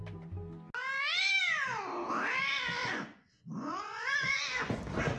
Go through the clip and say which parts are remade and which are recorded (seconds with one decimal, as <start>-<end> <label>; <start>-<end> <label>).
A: 0.0-2.8 recorded; 2.8-4.8 remade; 4.8-5.2 recorded